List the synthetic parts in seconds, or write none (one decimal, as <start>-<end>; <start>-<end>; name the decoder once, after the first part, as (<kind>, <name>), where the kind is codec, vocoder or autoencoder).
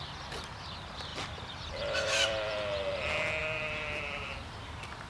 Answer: 1.1-3.0 (vocoder, BigVGAN v2); 3.4-4.3